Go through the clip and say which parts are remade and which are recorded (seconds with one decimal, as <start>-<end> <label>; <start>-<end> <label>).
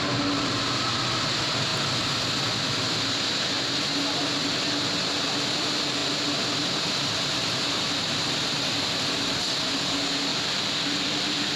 0.0-10.3 recorded; 10.3-11.6 remade